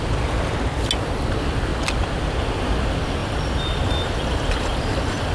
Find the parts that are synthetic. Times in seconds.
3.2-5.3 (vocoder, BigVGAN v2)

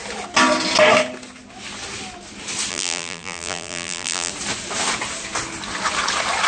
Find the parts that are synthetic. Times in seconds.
2.7-4.3 (vocoder, BigVGAN v2)

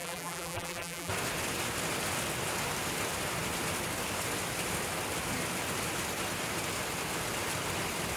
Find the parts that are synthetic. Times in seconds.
0.0-1.1 (vocoder, BigVGAN v2)

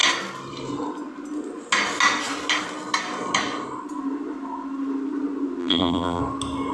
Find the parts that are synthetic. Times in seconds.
5.6-6.2 (vocoder, BigVGAN v2)

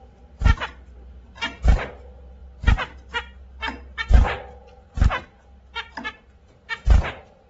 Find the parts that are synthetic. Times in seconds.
none

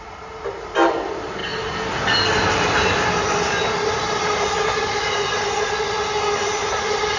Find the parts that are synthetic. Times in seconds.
none

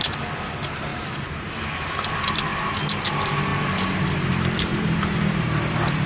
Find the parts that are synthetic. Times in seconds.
0.9-1.5 (vocoder, BigVGAN v2); 4.7-6.1